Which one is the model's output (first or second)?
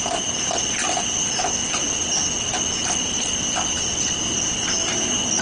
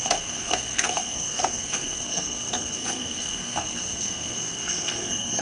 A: second